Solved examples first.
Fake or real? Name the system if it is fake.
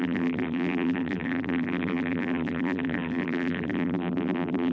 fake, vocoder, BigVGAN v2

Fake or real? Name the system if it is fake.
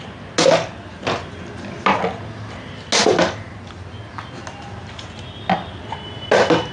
real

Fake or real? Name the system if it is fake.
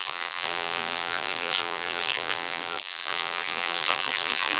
fake, vocoder, BigVGAN v2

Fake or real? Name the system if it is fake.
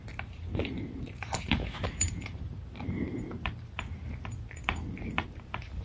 fake, vocoder, BigVGAN v2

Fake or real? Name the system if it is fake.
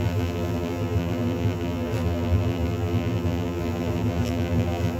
fake, vocoder, BigVGAN v2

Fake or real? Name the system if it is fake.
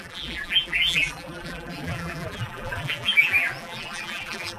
fake, vocoder, BigVGAN v2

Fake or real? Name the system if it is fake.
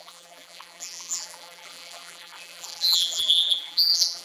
fake, vocoder, BigVGAN v2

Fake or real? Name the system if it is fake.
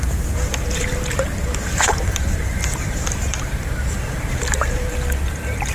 fake, vocoder, BigVGAN v2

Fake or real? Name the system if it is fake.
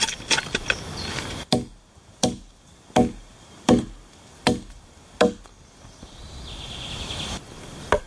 real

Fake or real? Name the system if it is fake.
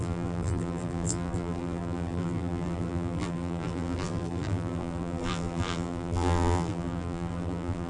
fake, vocoder, BigVGAN v2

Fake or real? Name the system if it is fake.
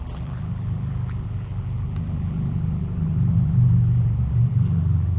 fake, vocoder, BigVGAN v2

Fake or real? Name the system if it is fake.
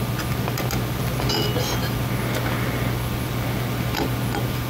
real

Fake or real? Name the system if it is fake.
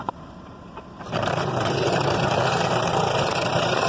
fake, vocoder, BigVGAN v2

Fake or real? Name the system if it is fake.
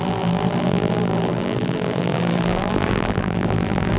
fake, vocoder, BigVGAN v2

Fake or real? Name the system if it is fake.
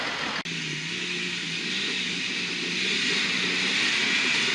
real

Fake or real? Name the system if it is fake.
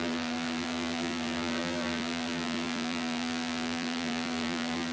fake, vocoder, BigVGAN v2